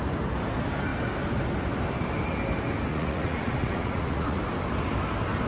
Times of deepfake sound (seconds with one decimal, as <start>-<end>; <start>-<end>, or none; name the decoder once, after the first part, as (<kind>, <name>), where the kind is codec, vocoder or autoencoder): 2.9-4.4 (vocoder, Vocos)